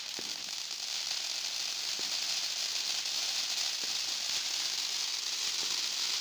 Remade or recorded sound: recorded